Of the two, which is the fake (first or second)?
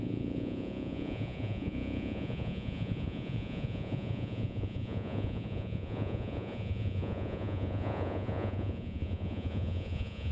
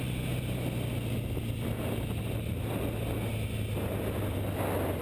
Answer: first